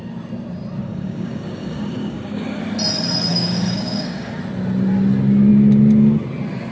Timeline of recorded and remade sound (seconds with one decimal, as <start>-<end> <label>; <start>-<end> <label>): 0.0-0.8 recorded; 0.8-2.6 remade; 2.6-3.3 recorded; 3.3-4.4 remade; 4.4-6.7 recorded